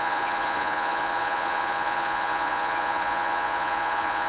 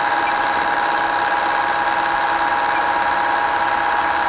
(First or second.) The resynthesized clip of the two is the first